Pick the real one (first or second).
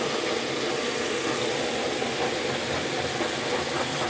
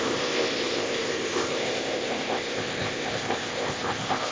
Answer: first